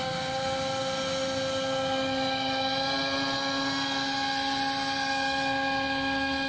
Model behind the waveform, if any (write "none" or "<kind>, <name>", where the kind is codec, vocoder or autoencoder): none